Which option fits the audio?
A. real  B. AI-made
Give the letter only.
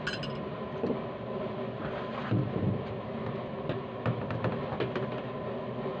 A